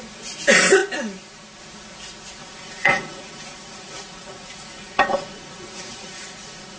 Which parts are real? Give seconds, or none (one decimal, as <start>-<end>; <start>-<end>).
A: 0.0-2.4